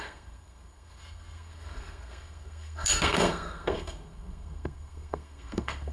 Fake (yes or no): yes